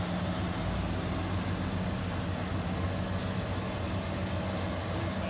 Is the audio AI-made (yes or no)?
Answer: no